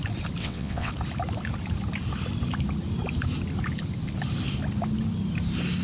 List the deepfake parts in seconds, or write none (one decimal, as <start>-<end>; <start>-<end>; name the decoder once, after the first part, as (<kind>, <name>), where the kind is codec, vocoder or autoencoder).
0.4-0.9 (vocoder, WaveNeXt)